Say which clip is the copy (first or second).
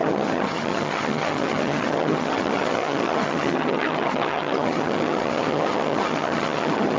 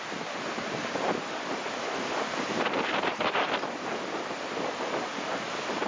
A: first